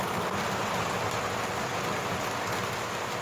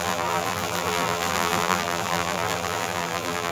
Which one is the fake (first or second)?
second